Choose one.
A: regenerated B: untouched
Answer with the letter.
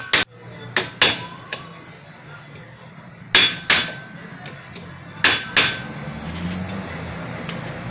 B